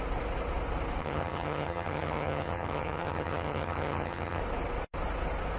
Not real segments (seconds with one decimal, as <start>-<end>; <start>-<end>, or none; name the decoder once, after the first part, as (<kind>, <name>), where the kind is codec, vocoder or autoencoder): 1.0-4.4 (vocoder, HiFi-GAN)